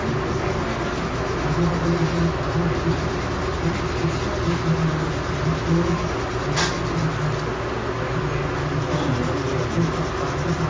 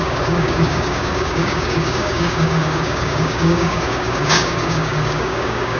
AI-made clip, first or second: second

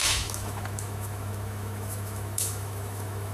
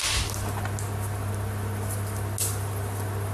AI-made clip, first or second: first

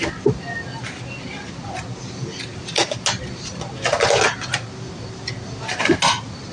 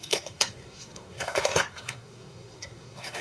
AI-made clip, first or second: second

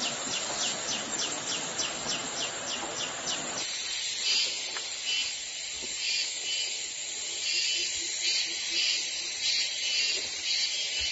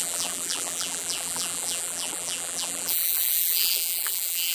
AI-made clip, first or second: second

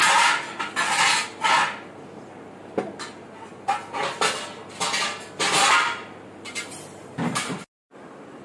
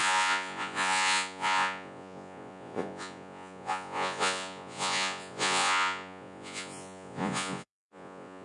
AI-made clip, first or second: second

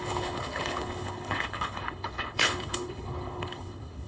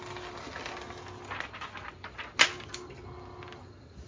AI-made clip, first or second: first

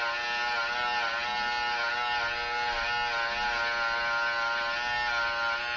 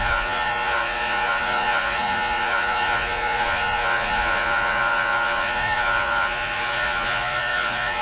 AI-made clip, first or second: second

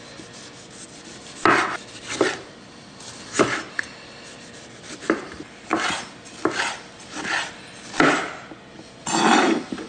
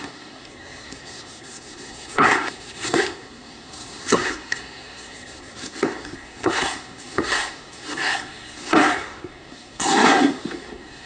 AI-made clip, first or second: second